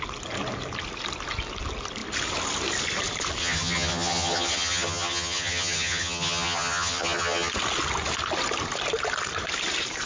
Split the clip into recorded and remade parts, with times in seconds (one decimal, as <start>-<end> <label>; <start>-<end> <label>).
0.0-3.4 recorded; 3.4-7.5 remade; 7.5-10.1 recorded